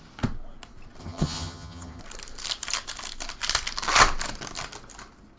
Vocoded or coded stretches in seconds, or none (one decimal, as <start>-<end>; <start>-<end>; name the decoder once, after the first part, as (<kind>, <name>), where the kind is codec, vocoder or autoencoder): 1.0-2.0 (vocoder, HiFi-GAN)